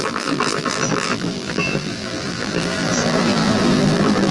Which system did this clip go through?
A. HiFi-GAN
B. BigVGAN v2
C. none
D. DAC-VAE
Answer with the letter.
B